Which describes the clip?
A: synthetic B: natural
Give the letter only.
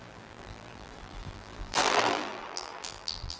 A